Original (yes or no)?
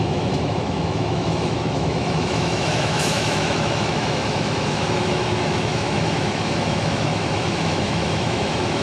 no